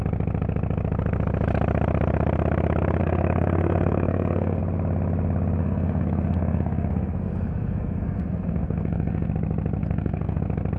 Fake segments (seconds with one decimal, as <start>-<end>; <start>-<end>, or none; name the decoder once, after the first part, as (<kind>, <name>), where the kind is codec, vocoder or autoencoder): 3.0-4.6 (codec, SNAC); 5.6-9.3; 9.8-10.4